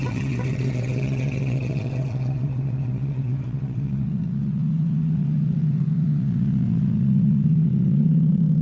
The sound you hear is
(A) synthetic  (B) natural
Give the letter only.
A